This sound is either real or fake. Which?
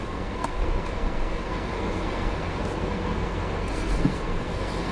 fake